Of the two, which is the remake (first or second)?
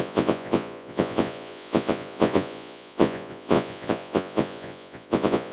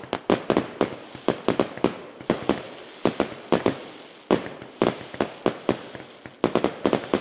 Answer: first